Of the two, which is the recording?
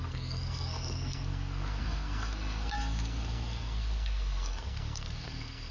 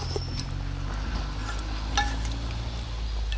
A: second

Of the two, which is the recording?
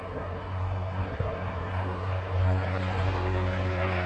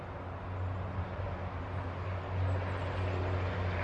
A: second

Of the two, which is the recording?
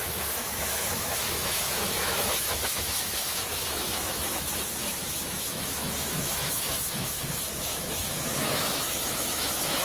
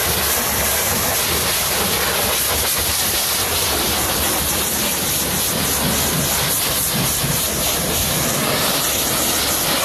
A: second